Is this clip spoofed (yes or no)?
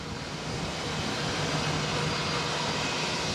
no